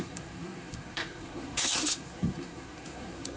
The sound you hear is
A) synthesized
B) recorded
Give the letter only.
A